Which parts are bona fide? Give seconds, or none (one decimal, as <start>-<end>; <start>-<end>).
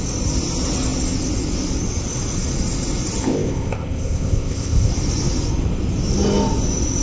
0.0-3.2; 4.9-7.0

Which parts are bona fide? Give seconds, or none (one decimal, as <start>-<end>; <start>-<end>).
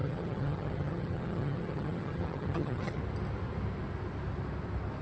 3.0-5.0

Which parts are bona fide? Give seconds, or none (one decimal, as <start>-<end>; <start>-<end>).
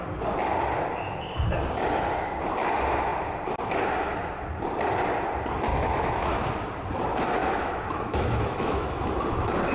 0.0-5.7; 6.5-7.4; 9.0-9.7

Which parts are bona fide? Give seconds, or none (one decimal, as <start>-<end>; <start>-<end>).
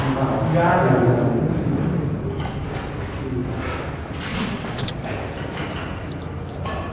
0.0-4.3; 5.1-6.9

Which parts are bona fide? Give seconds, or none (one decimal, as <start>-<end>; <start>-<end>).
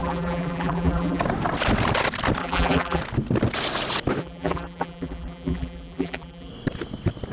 1.2-2.4; 3.0-4.2; 6.5-7.3